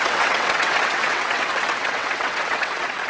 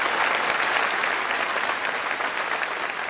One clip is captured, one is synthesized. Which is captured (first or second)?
second